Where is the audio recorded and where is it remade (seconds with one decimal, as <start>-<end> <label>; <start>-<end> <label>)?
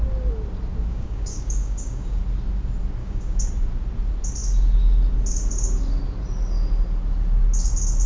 0.0-0.9 recorded; 0.9-2.2 remade; 2.2-3.0 recorded; 3.0-3.5 remade; 3.5-8.1 recorded